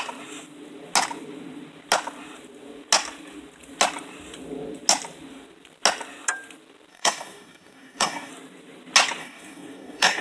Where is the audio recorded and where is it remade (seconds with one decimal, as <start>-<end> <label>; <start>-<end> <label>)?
0.0-6.9 recorded; 6.9-8.3 remade; 8.3-9.2 recorded; 9.2-10.2 remade